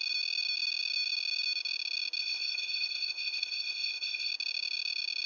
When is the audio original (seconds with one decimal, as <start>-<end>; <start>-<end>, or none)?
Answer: 0.0-2.2; 4.3-5.3